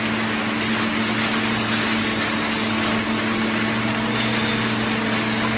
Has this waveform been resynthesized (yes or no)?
no